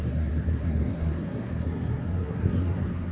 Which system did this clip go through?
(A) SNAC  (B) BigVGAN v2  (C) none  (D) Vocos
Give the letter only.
A